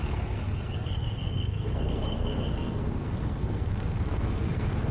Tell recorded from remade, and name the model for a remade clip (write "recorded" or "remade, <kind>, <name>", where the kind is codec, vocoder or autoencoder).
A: remade, codec, SNAC